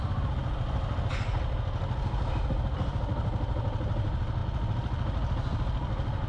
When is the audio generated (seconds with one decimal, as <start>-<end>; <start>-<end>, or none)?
none